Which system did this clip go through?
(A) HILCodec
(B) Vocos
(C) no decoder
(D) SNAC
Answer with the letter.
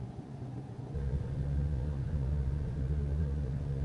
B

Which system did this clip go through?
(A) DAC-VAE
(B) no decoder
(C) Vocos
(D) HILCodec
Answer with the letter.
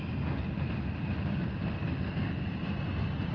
B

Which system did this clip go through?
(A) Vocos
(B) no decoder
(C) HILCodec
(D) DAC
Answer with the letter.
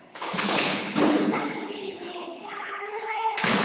C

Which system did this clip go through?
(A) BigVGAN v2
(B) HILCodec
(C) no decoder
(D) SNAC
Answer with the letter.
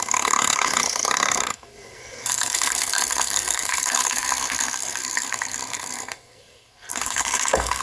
D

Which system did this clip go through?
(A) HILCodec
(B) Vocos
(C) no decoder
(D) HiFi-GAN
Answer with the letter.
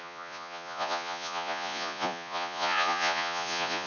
B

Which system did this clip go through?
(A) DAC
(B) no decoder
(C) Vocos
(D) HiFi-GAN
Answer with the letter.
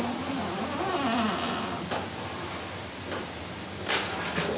B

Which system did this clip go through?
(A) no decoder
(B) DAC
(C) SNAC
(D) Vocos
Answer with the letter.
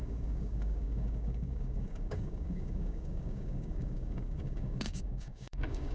B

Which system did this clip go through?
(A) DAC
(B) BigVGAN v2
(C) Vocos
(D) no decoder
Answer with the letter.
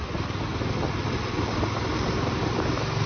D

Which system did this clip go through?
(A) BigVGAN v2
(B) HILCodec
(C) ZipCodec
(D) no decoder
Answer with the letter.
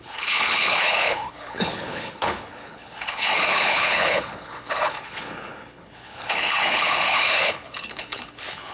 B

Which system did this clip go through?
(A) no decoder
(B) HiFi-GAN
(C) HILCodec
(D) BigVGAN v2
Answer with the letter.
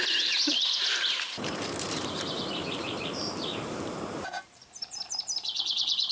D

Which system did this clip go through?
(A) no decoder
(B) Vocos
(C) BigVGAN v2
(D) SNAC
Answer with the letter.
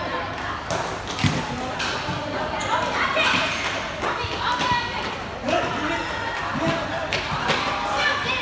A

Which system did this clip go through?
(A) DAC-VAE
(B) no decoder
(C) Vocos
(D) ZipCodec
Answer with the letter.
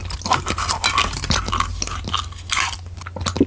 B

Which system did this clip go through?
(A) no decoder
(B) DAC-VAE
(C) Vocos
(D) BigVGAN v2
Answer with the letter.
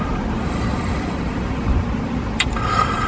D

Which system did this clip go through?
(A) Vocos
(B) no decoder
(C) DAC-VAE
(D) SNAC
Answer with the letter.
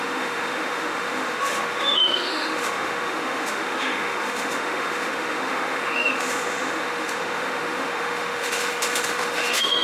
C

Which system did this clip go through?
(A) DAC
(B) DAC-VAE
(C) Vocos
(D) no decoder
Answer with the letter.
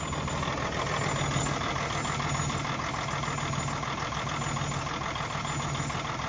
D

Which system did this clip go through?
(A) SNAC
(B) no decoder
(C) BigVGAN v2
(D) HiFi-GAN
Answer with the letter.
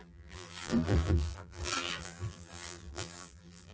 C